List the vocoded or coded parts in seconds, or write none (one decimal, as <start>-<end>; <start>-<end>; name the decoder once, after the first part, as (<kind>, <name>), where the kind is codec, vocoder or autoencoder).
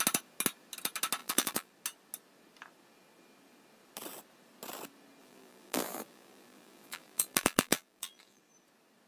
1.2-1.7 (vocoder, BigVGAN v2); 5.2-8.4